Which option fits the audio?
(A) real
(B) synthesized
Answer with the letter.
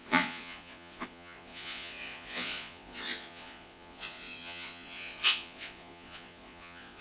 B